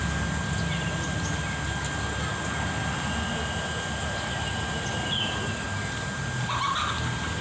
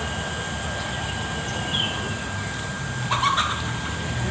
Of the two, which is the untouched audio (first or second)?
first